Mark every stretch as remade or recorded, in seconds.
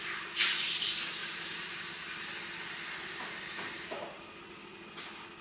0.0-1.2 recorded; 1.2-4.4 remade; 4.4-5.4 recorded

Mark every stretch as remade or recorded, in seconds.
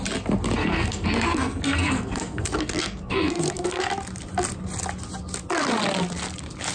0.0-0.6 recorded; 0.6-3.9 remade; 3.9-6.7 recorded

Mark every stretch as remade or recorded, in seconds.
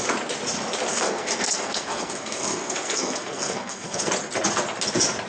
0.0-0.9 recorded; 0.9-4.1 remade; 4.1-5.3 recorded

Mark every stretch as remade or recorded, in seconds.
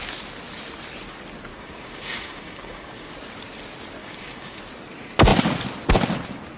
0.0-1.5 recorded; 1.5-3.1 remade; 3.1-4.0 recorded; 4.0-4.6 remade; 4.6-6.6 recorded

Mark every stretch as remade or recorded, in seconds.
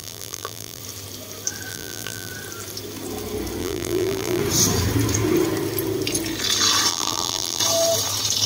0.0-0.8 remade; 0.8-1.7 recorded; 1.7-2.3 remade; 2.3-3.6 recorded; 3.6-4.4 remade; 4.4-6.9 recorded; 6.9-7.6 remade; 7.6-8.5 recorded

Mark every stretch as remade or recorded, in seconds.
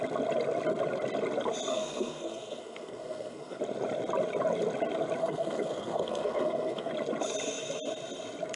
0.0-1.7 recorded; 1.7-3.6 remade; 3.6-5.2 recorded; 5.2-6.9 remade; 6.9-8.6 recorded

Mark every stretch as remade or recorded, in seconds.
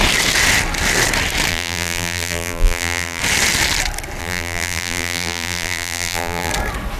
0.0-1.5 recorded; 1.5-3.2 remade; 3.2-4.2 recorded; 4.2-6.5 remade; 6.5-7.0 recorded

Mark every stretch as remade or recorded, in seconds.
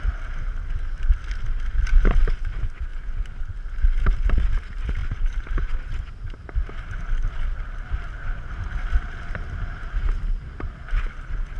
0.0-11.6 recorded